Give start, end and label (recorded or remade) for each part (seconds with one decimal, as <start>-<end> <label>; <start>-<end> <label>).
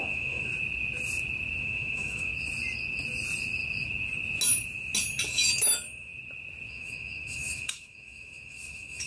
0.0-0.5 remade; 0.5-1.6 recorded; 1.6-2.3 remade; 2.3-5.3 recorded; 5.3-6.1 remade; 6.1-6.7 recorded; 6.7-9.1 remade